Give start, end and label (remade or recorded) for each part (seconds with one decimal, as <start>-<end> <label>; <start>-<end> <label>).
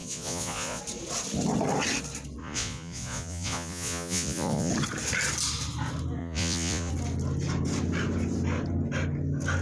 0.0-0.8 remade; 0.8-2.4 recorded; 2.4-4.7 remade; 4.7-6.2 recorded; 6.2-6.9 remade; 6.9-9.6 recorded